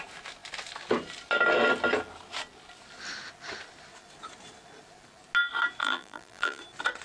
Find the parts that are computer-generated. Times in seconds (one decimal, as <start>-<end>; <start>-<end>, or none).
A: 5.8-6.6